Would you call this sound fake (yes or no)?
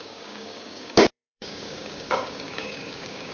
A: yes